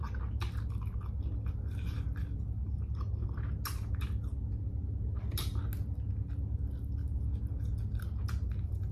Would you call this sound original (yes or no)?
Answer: yes